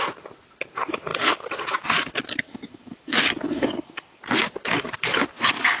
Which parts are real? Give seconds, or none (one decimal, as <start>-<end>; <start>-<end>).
0.0-2.5; 4.2-5.3

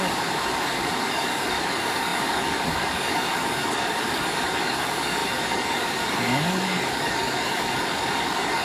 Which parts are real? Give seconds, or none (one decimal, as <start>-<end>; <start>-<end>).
none